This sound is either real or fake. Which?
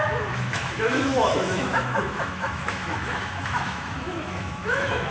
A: fake